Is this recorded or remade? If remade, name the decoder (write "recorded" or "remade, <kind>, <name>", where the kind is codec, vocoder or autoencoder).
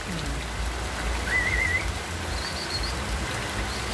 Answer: recorded